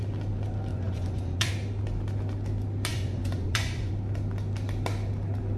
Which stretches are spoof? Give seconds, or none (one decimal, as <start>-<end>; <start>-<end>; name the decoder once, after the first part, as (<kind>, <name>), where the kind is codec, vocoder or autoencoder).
0.7-1.5 (vocoder, Vocos); 2.9-3.9